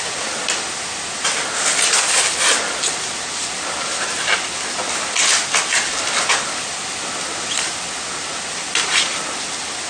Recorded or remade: recorded